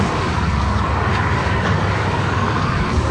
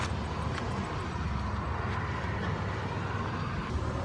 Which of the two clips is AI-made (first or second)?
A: first